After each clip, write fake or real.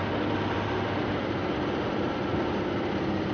real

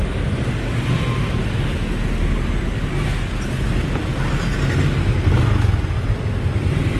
real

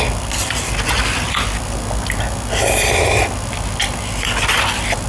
real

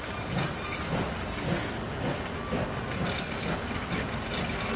real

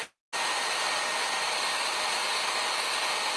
real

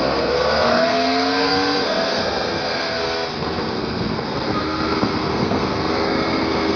fake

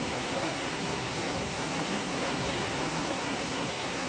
fake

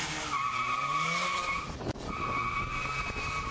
real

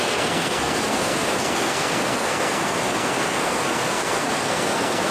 fake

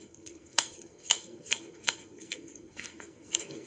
fake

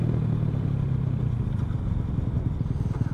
real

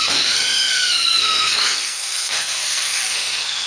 fake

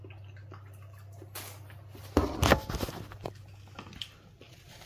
real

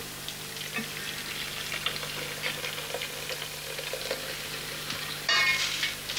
real